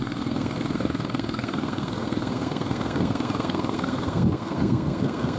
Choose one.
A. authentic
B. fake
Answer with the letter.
B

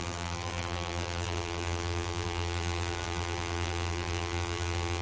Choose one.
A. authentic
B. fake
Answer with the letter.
B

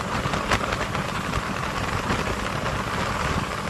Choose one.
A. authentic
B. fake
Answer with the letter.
A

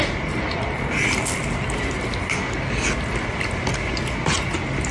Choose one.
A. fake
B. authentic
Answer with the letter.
B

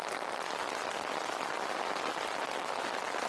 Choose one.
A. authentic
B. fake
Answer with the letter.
A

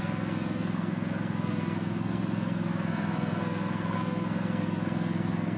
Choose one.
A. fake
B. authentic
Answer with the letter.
A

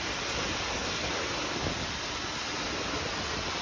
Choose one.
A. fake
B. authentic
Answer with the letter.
B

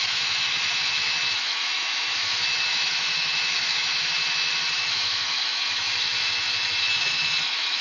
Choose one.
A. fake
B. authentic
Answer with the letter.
A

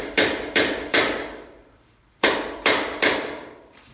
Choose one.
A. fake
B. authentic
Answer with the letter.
A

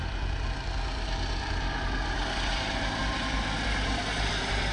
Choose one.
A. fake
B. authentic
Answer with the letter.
B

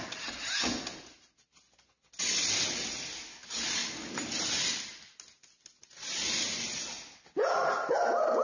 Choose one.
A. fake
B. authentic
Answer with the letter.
B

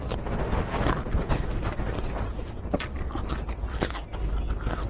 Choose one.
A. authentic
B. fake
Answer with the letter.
A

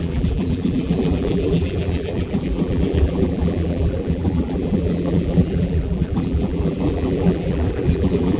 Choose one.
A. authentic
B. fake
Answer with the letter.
B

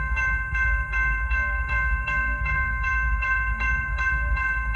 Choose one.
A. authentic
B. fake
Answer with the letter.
B